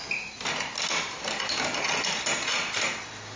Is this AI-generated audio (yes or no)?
no